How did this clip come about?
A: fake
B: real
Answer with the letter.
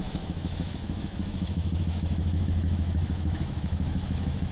A